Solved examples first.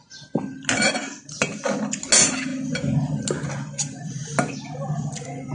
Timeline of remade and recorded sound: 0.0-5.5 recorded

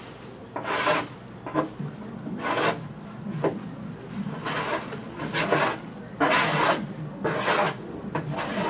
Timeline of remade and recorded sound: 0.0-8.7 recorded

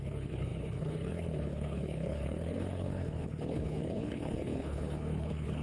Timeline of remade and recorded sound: 0.0-5.6 remade